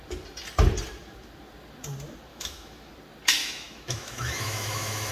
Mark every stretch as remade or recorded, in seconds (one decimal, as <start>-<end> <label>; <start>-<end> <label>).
0.0-2.3 recorded; 2.3-2.9 remade; 2.9-3.4 recorded; 3.4-5.1 remade